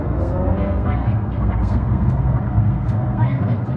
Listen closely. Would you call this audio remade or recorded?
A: remade